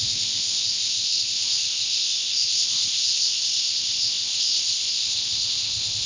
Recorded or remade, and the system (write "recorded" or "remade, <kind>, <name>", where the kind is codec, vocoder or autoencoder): remade, codec, ZipCodec